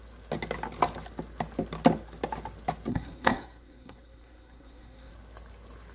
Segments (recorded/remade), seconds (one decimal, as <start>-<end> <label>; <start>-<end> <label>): 0.0-2.9 recorded; 2.9-5.1 remade; 5.1-5.9 recorded